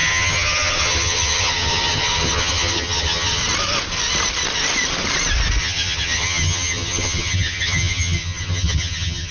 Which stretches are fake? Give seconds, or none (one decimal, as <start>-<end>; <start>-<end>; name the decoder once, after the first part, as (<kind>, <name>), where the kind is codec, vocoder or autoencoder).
0.0-3.4 (vocoder, HiFi-GAN); 5.6-9.3